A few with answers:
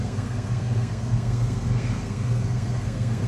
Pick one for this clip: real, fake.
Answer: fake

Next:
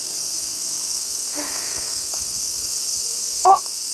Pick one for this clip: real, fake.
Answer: fake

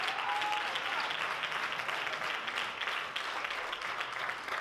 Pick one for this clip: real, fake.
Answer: real